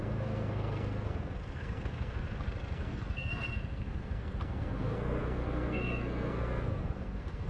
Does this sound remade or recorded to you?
remade